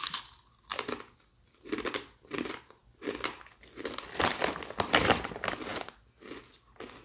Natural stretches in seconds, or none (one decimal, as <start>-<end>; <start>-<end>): 0.0-7.0